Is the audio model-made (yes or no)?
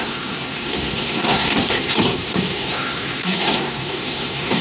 yes